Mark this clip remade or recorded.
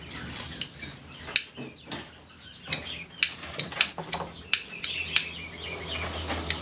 recorded